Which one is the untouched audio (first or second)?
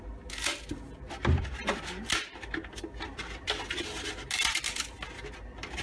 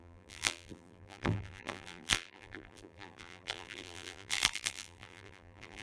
first